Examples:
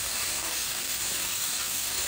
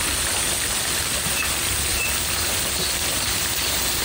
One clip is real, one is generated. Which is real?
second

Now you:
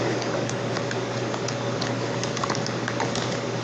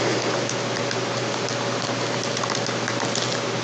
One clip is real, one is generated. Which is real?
second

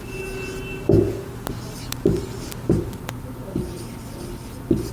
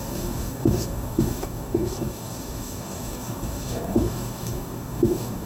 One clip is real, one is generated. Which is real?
first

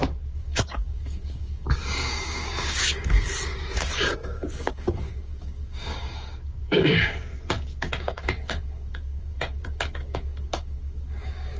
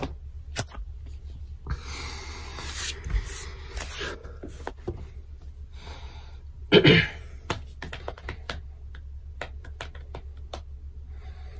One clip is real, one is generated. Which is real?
second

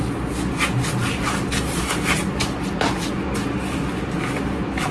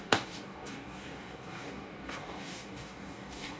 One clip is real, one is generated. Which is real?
first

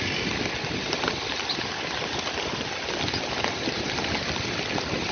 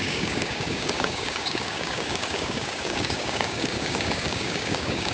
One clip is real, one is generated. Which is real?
first